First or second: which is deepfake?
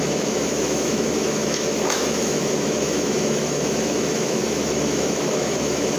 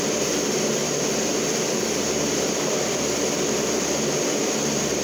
first